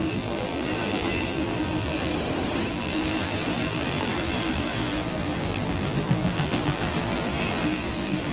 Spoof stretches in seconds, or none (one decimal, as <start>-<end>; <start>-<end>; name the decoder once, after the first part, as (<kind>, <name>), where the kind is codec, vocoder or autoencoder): 0.0-2.1 (vocoder, BigVGAN v2); 2.7-8.3